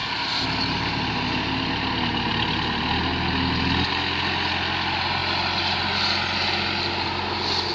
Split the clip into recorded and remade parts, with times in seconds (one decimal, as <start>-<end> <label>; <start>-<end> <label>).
0.0-7.7 recorded